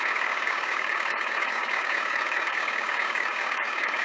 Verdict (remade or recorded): remade